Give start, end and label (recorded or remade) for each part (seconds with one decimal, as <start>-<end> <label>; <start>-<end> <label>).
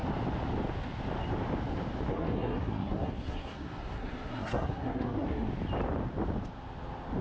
0.0-2.1 recorded; 2.1-5.5 remade; 5.5-7.2 recorded